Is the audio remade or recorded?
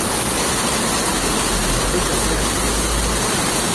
recorded